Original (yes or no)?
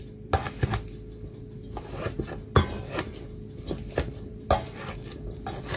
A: yes